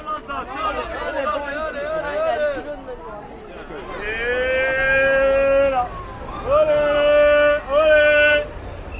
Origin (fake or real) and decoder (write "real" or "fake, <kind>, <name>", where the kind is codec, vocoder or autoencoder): real